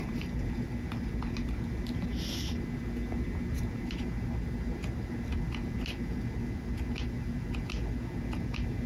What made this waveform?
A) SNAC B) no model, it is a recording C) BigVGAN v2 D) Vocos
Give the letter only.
B